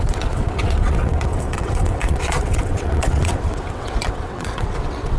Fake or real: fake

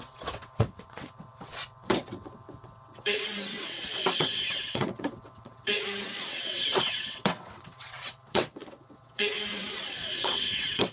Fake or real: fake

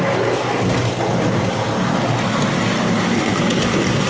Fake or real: real